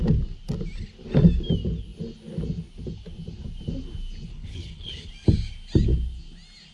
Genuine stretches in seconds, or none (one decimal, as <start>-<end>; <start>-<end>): 0.0-4.3; 5.1-6.7